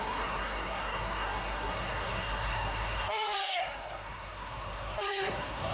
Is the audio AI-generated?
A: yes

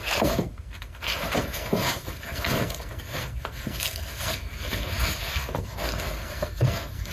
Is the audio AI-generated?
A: yes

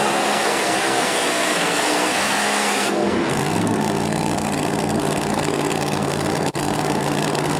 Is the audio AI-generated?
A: yes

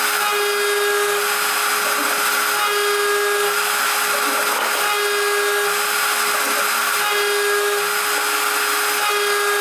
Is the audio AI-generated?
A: no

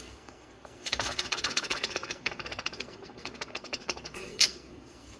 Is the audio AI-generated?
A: yes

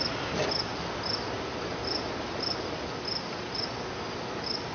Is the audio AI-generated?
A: no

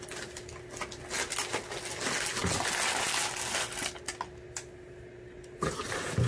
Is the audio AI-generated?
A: no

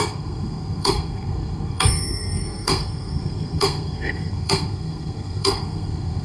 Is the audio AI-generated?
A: yes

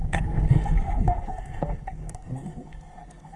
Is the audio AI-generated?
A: yes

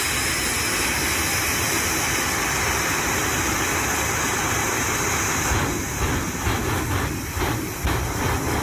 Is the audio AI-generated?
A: no